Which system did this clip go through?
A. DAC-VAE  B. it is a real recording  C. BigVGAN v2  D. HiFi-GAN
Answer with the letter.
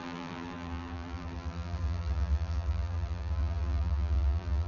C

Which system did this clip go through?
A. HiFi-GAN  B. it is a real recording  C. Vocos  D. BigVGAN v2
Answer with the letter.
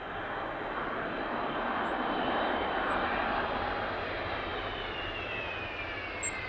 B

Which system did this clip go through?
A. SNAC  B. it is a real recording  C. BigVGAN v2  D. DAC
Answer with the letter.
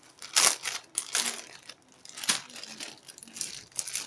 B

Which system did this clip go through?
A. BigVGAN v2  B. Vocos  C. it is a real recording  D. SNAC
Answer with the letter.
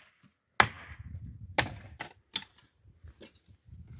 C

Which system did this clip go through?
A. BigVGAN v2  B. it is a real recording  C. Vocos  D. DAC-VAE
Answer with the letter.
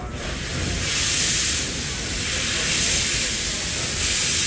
B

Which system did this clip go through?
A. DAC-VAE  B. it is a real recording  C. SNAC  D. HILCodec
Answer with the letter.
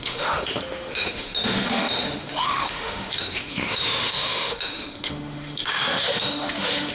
A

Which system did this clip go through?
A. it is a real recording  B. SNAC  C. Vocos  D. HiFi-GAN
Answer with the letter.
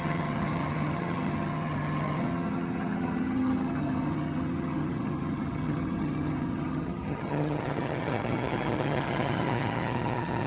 D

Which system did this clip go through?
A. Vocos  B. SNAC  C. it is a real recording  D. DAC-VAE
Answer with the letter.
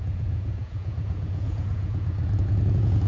A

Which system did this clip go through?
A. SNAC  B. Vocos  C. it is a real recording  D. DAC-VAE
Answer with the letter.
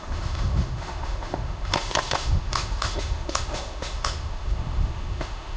D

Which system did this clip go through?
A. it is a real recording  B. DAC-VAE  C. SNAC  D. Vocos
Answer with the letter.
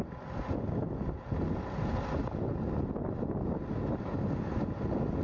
A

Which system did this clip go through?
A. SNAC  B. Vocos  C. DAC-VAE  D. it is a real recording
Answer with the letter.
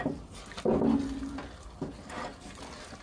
D